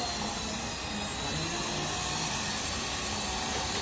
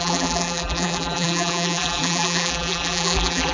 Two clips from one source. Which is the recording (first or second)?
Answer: first